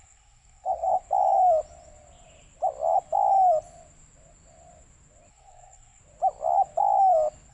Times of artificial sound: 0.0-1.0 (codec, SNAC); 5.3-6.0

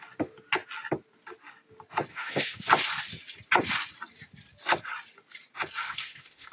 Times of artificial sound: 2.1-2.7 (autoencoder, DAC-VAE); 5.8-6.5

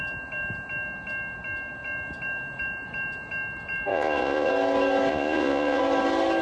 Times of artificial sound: 3.9-4.5 (vocoder, Vocos); 5.1-5.8

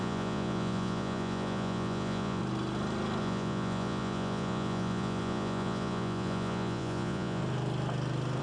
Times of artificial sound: 0.0-2.4 (vocoder, Vocos); 3.2-7.4